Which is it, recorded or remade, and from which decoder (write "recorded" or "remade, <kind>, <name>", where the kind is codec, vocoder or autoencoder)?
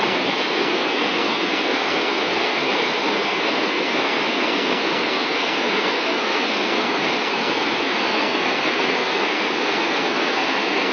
remade, codec, SNAC